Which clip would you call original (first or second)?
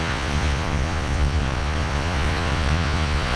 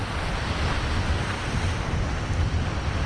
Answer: second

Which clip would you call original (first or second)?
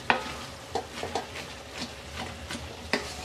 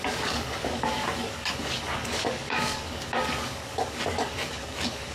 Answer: first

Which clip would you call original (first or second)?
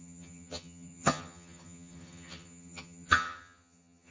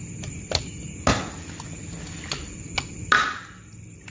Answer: second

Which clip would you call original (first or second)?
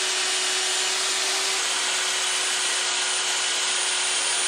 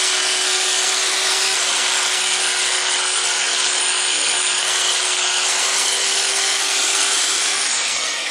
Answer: first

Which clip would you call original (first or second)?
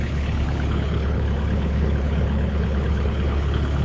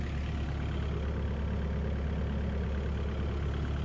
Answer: second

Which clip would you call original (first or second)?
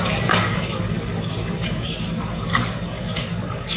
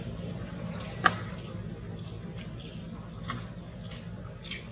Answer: second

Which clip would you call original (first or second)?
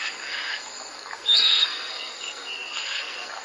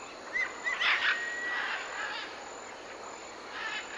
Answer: second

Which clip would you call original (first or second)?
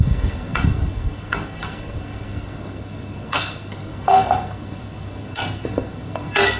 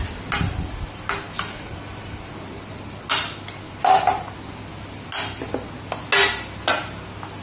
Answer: second